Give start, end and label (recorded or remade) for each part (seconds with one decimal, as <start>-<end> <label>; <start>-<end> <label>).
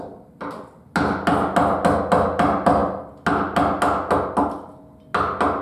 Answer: 0.0-5.6 recorded